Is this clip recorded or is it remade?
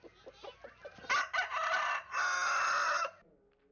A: recorded